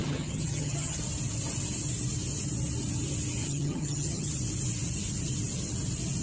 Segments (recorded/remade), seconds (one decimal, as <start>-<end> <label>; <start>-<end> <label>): 0.0-1.0 remade; 1.0-3.4 recorded; 3.4-4.3 remade; 4.3-6.2 recorded